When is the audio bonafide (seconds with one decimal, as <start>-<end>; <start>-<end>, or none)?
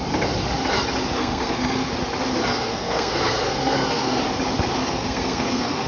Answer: 0.0-1.2; 1.9-2.5; 4.2-4.8